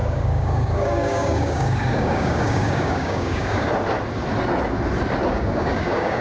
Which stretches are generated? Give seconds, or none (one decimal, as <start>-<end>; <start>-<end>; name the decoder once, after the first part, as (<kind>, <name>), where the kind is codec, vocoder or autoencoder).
0.0-3.7 (codec, DAC); 5.3-6.2